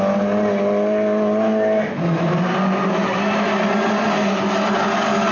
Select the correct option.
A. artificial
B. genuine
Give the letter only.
B